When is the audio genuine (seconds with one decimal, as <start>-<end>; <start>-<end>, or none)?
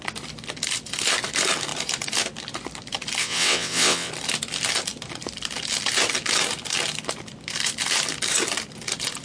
0.0-3.2; 4.1-9.2